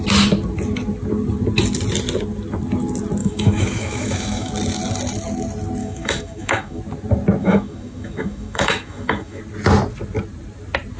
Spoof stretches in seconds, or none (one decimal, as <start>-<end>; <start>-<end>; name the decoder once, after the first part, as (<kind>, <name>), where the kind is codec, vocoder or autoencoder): 3.2-4.5 (autoencoder, DAC-VAE); 5.8-6.8; 7.4-9.4